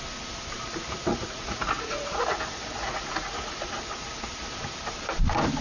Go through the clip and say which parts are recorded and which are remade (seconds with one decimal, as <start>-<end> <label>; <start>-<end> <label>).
0.0-1.1 recorded; 1.1-2.4 remade; 2.4-2.8 recorded; 2.8-3.7 remade; 3.7-5.6 recorded